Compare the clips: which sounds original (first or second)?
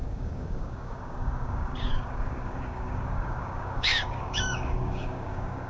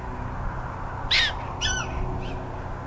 second